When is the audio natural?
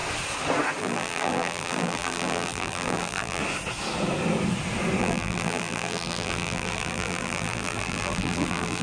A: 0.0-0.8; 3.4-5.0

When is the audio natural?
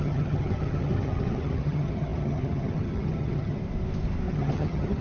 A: 3.6-4.3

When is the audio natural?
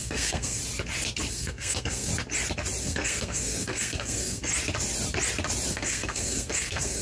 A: 0.6-1.3; 2.1-2.8; 4.5-5.7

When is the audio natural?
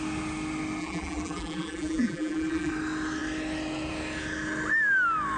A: 0.0-0.8; 2.7-5.4